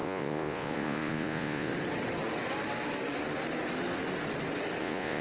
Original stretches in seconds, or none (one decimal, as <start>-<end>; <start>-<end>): 1.7-4.8